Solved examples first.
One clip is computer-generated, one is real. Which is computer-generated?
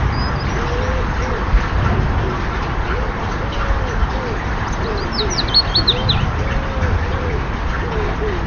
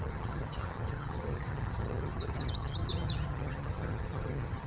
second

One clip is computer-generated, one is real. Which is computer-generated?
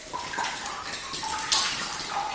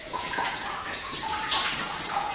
second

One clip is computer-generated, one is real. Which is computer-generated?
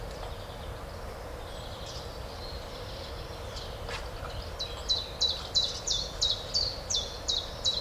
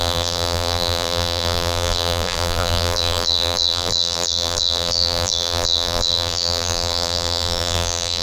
second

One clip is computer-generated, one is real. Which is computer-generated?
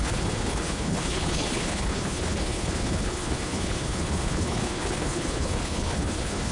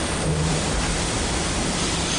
first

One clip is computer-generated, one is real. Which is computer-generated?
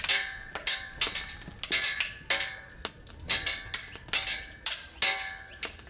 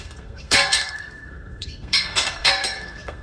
second